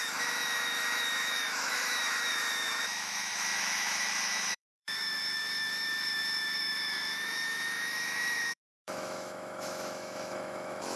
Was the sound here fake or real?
fake